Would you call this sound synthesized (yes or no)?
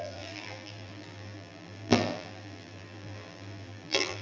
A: yes